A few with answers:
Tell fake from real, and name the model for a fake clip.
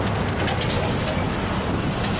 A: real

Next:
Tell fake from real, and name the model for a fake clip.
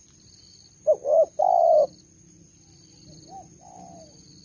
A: real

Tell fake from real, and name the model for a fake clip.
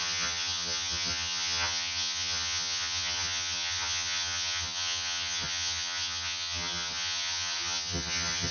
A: fake, vocoder, HiFi-GAN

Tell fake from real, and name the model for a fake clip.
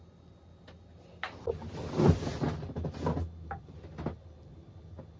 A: real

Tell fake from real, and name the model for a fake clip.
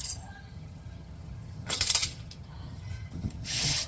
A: fake, vocoder, HiFi-GAN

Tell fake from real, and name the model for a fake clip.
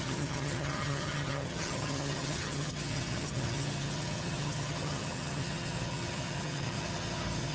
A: fake, vocoder, HiFi-GAN